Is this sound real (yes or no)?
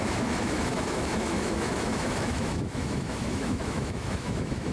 no